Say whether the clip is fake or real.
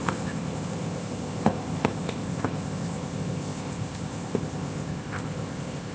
fake